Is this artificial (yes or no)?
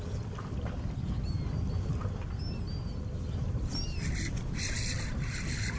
no